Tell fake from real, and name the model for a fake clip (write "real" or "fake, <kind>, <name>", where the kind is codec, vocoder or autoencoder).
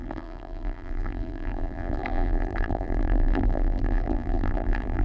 fake, vocoder, BigVGAN v2